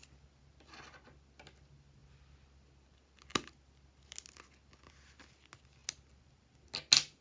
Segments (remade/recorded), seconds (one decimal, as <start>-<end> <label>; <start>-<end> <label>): 0.0-7.2 recorded